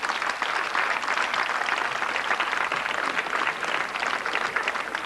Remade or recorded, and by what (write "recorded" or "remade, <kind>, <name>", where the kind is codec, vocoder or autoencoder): recorded